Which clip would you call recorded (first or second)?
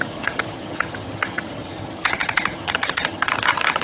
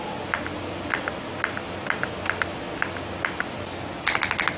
second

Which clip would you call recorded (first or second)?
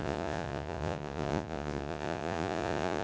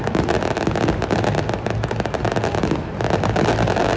second